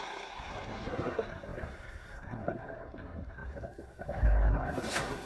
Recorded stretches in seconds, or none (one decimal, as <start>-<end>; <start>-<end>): none